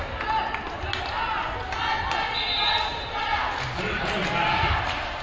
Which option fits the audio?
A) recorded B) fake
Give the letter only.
A